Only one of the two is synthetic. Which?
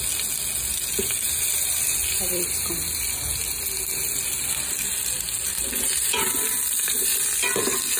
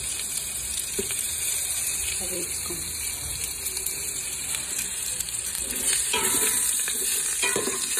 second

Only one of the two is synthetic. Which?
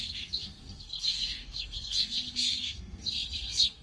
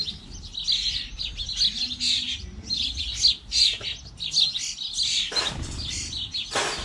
first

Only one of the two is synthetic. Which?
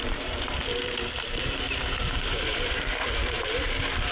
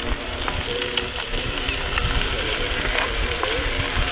first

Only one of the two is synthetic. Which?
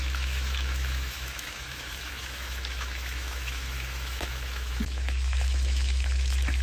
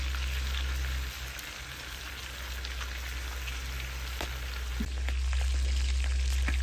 first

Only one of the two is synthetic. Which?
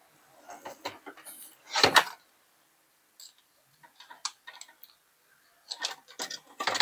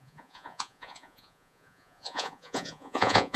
second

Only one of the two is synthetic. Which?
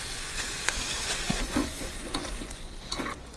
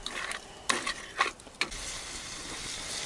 first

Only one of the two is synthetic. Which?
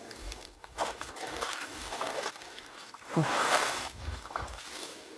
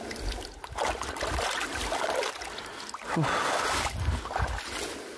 first